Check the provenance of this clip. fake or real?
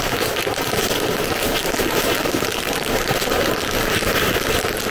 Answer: real